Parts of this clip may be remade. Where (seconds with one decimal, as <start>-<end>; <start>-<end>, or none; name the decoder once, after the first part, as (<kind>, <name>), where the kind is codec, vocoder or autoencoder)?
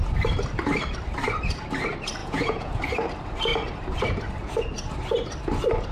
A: 2.2-2.8 (vocoder, Vocos)